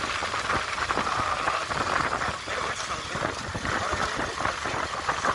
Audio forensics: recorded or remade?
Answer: recorded